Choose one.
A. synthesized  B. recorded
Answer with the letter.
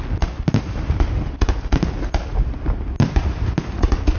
B